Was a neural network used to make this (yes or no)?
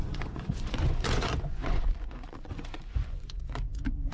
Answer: yes